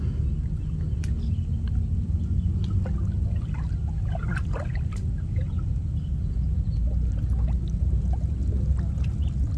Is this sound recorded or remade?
recorded